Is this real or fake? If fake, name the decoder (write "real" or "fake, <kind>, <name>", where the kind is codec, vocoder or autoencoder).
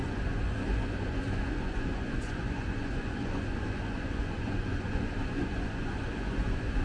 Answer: fake, vocoder, Vocos